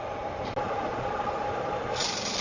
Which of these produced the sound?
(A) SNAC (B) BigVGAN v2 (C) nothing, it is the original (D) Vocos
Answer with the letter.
C